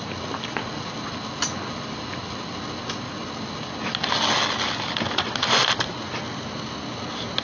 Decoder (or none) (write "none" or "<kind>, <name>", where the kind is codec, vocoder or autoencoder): none